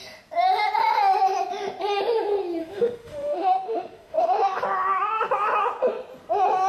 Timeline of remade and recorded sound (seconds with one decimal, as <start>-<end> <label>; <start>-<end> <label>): 0.0-2.6 recorded; 2.6-4.6 remade; 4.6-6.7 recorded